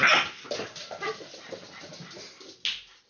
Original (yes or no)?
yes